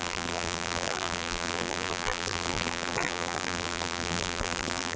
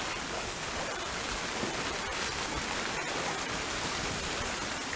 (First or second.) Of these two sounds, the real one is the second